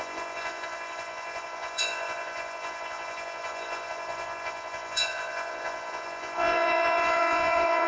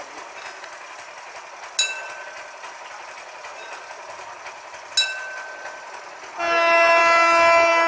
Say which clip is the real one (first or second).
second